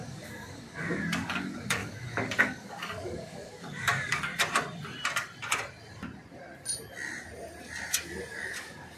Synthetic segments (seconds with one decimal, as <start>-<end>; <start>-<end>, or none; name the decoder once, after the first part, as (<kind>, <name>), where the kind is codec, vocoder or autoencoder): 0.0-4.3 (codec, DAC); 8.3-9.0